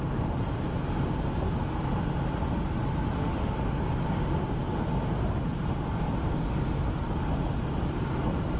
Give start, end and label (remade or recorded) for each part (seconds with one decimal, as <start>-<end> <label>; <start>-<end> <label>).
0.0-3.1 recorded; 3.1-3.8 remade; 3.8-8.6 recorded